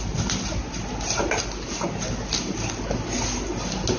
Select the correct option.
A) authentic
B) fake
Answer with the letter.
A